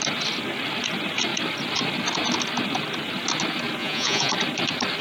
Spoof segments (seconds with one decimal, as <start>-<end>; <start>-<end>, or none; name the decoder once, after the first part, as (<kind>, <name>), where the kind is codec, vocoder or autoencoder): 3.8-4.3 (vocoder, Vocos)